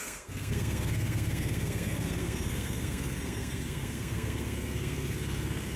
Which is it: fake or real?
fake